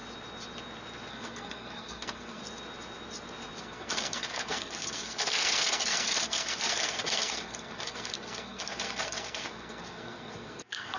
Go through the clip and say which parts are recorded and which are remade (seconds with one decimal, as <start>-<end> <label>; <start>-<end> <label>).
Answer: 0.0-1.1 recorded; 1.1-2.4 remade; 2.4-3.6 recorded; 3.6-11.0 remade